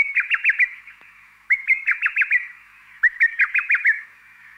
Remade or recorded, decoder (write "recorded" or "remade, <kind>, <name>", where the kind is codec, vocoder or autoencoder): remade, autoencoder, DAC-VAE